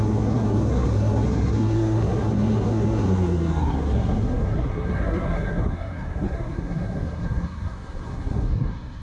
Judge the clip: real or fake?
fake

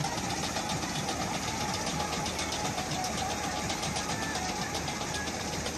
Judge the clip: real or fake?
real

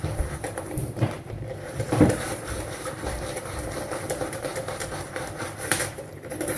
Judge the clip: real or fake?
fake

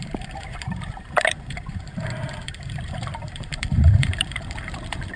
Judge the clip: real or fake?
fake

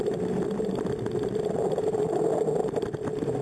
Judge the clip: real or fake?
real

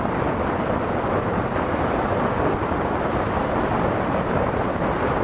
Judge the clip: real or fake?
real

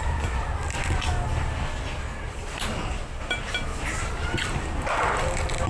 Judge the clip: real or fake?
real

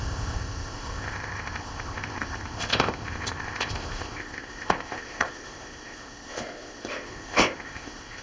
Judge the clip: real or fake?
fake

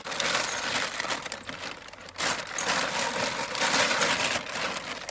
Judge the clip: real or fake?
real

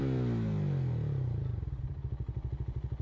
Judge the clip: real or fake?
real